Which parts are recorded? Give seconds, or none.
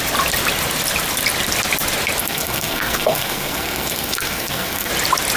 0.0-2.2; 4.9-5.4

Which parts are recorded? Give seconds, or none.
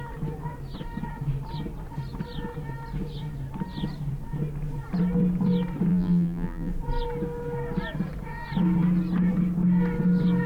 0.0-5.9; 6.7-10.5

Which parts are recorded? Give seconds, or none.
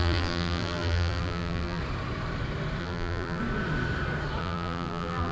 1.8-2.8; 3.4-4.4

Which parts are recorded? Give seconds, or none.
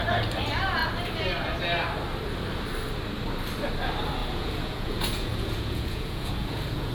0.0-4.2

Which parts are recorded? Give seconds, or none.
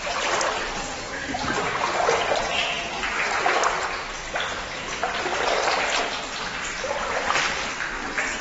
0.0-4.2; 4.8-8.4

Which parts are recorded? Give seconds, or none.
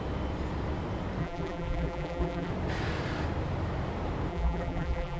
0.0-1.2; 2.5-4.3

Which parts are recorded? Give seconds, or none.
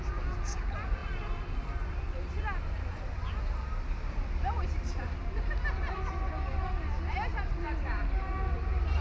0.0-9.0